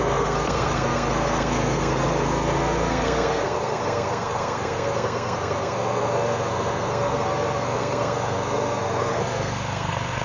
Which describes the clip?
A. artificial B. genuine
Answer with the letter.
A